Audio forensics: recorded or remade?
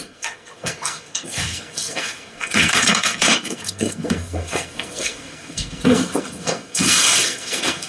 remade